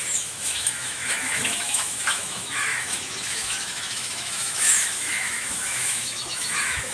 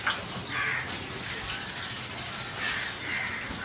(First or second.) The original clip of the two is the second